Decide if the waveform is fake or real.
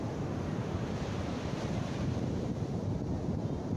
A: fake